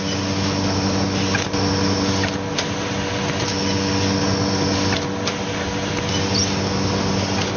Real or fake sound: real